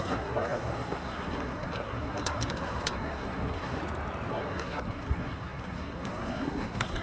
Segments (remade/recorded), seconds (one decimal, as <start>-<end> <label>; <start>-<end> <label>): 0.0-3.8 remade; 3.8-4.3 recorded; 4.3-7.0 remade